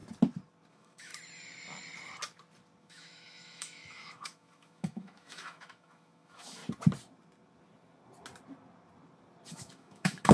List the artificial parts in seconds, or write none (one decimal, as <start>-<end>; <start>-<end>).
0.7-1.1; 2.8-6.6; 9.5-10.3